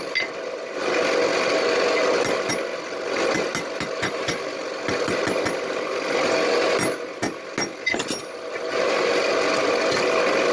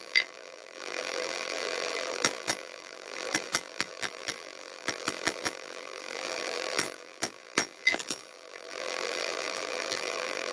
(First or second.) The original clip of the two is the first